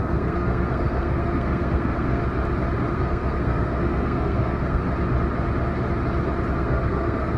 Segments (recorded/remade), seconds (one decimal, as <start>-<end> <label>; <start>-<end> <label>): 0.0-2.2 remade; 2.2-2.9 recorded; 2.9-4.8 remade; 4.8-6.5 recorded; 6.5-7.4 remade